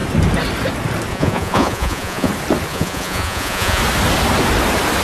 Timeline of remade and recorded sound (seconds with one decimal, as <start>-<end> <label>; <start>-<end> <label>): 0.0-1.1 recorded; 1.1-2.3 remade; 2.3-2.7 recorded; 2.7-3.8 remade; 3.8-5.0 recorded